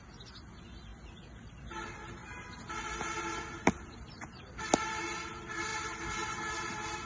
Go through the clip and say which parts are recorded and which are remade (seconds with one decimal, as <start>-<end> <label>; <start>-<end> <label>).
0.0-7.1 recorded